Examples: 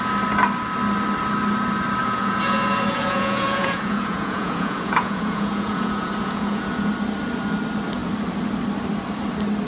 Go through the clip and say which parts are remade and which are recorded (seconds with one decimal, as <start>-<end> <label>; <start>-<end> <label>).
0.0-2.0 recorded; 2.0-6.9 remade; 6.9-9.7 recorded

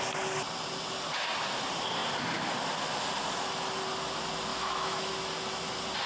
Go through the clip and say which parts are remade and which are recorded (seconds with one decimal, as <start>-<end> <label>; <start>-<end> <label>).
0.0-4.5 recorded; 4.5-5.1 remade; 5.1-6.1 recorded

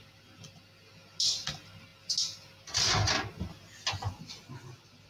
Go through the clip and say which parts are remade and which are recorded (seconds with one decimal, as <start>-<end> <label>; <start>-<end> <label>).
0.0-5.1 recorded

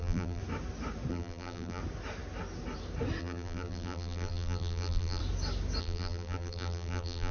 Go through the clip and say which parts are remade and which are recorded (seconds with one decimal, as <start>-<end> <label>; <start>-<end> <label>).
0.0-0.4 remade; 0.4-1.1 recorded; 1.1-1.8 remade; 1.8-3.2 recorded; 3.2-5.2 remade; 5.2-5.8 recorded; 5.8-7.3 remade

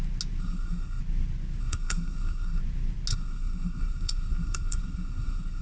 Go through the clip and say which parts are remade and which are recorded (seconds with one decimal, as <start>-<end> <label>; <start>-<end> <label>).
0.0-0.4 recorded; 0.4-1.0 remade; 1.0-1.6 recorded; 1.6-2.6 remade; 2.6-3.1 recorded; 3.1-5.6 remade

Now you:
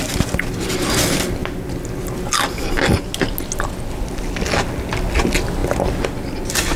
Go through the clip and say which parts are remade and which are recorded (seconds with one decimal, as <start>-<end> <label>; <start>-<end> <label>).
0.0-6.8 recorded

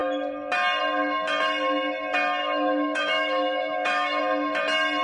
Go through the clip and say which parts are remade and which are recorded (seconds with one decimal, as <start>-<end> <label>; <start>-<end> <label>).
0.0-2.4 recorded; 2.4-4.2 remade; 4.2-5.0 recorded

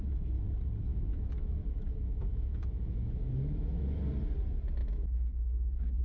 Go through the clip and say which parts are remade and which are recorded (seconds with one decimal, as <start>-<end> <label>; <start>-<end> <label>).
0.0-0.9 recorded; 0.9-4.0 remade; 4.0-4.8 recorded; 4.8-6.0 remade